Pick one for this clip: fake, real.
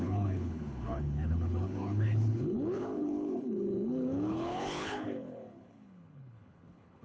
fake